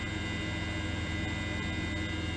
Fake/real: real